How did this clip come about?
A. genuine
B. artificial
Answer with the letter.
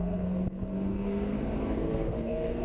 B